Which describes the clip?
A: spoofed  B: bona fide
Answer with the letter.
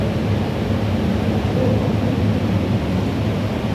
B